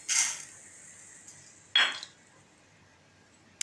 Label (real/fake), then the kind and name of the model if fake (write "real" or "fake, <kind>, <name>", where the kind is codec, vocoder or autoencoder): real